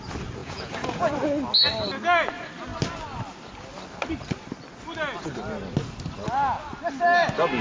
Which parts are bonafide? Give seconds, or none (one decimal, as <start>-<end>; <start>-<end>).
0.0-0.4; 1.1-7.6